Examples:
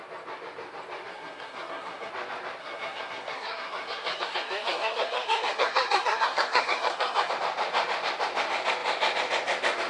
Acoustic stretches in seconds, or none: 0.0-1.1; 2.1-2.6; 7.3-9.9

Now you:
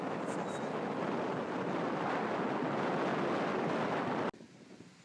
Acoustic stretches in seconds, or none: 0.0-5.0

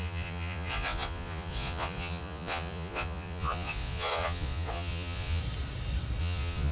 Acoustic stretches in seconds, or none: 5.4-6.2

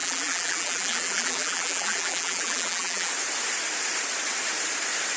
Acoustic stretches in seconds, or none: 3.1-5.2

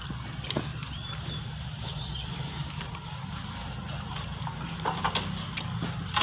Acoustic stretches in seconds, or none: 0.0-0.7; 4.4-6.2